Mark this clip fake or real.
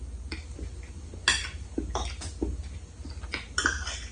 real